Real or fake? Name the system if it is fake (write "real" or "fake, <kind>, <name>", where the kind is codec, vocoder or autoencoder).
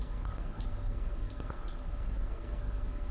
fake, codec, SNAC